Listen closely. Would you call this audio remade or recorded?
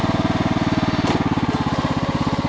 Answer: recorded